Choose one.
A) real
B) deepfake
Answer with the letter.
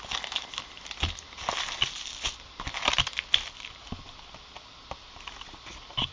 A